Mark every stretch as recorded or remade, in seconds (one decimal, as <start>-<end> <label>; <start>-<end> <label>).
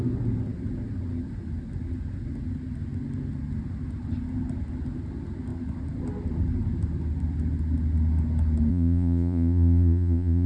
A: 0.0-8.7 recorded; 8.7-10.5 remade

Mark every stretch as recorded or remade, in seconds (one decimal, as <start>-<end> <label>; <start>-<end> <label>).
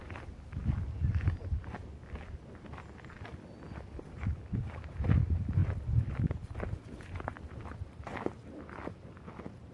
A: 0.0-9.7 recorded